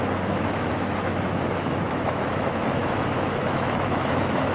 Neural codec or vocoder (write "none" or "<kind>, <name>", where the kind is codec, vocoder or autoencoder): autoencoder, DAC-VAE